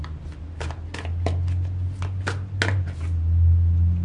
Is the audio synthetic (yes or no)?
no